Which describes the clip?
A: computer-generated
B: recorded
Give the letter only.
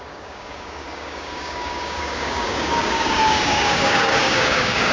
A